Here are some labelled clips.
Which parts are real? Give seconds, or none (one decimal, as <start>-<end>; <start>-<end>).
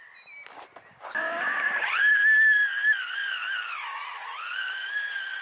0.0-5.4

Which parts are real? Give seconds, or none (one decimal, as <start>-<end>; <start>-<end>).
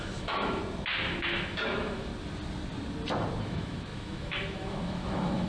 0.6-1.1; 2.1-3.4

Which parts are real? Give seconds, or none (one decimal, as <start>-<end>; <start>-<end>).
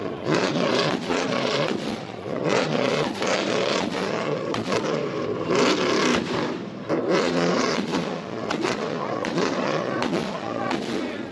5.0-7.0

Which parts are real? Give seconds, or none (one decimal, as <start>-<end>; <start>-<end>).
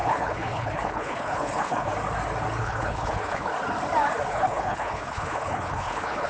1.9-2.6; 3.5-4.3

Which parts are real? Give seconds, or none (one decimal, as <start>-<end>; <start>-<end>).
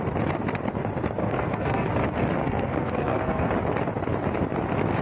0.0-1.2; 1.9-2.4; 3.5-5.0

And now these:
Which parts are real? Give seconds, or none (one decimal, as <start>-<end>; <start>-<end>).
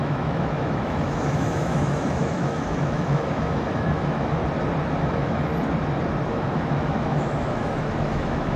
4.4-5.0; 5.5-6.3